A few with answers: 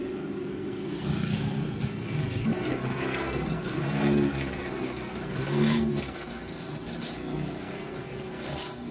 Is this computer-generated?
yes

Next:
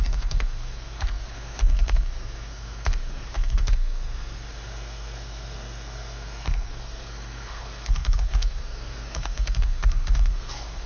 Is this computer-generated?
yes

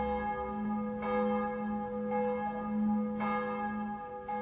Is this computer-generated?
no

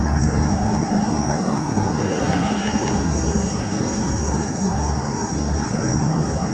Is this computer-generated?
yes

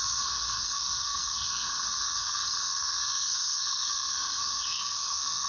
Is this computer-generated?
yes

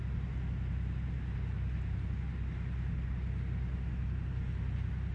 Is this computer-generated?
no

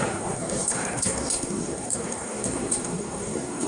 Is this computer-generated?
yes